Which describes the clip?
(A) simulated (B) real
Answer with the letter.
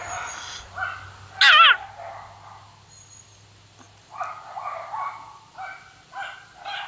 B